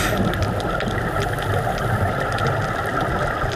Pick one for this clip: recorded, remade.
recorded